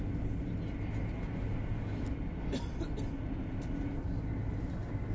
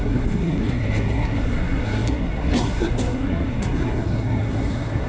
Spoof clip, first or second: second